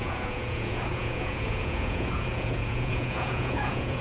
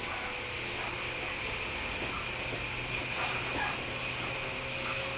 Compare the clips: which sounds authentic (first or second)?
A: second